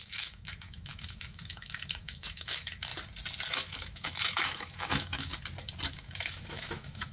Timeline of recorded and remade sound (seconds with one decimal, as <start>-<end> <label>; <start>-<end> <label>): 0.0-2.9 remade; 2.9-3.5 recorded; 3.5-5.3 remade; 5.3-5.9 recorded; 5.9-7.1 remade